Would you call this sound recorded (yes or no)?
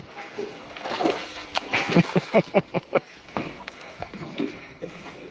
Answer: no